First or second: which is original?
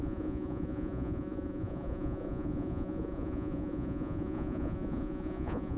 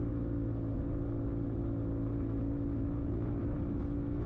second